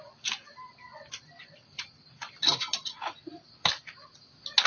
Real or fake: real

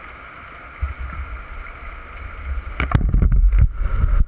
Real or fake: real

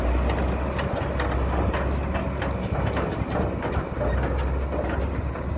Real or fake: real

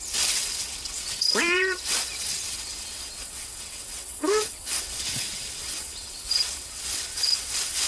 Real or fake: fake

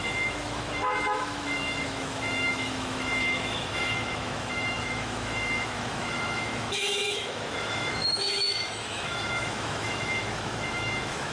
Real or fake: fake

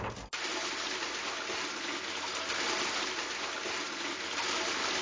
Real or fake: real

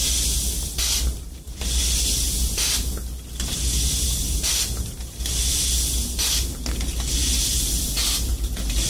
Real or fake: real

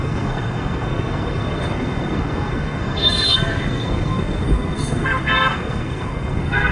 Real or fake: fake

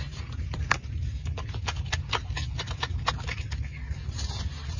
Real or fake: real